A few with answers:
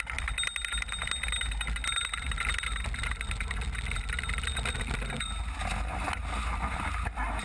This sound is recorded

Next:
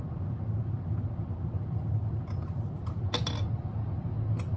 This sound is recorded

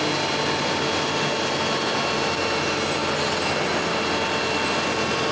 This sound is recorded